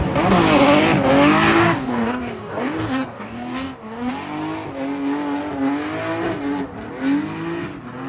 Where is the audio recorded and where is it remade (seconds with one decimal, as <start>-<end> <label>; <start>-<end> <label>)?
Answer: 0.0-1.5 recorded; 1.5-4.1 remade; 4.1-8.1 recorded